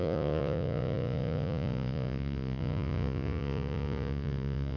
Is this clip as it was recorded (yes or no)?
no